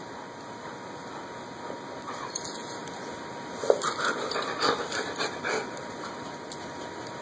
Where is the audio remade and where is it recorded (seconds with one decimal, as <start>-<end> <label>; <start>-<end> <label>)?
0.0-7.2 recorded